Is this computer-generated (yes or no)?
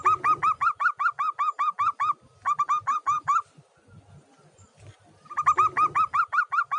no